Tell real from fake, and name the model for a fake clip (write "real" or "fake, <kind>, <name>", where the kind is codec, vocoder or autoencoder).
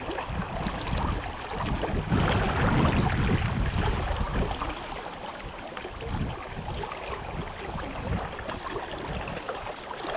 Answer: real